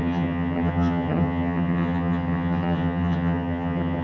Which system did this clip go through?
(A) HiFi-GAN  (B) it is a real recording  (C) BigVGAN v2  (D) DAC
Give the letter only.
A